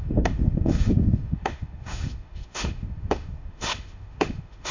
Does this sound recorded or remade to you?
remade